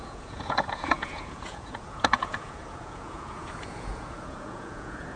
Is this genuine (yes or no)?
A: no